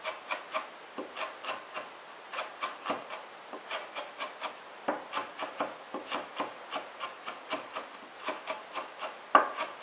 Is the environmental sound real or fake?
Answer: real